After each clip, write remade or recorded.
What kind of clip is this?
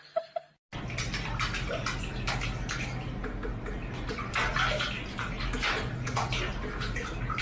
recorded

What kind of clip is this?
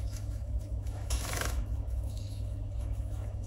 remade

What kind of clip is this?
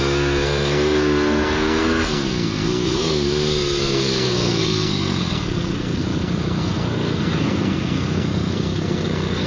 remade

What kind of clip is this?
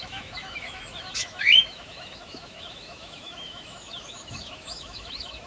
remade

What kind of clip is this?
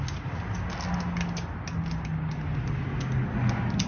recorded